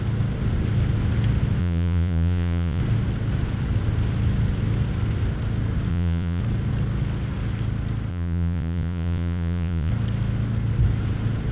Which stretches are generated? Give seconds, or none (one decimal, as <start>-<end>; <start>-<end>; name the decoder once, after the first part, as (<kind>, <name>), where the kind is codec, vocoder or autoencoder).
1.6-2.8 (vocoder, Vocos); 5.9-6.4; 8.1-9.9